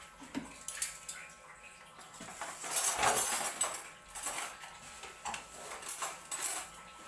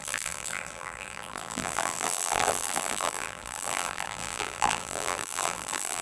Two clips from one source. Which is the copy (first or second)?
second